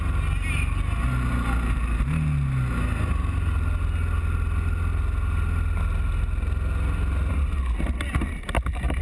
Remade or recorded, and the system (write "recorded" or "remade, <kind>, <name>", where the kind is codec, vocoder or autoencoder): recorded